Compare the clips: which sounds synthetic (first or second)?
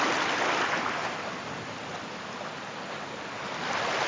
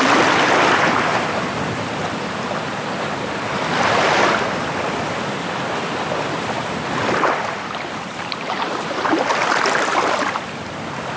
second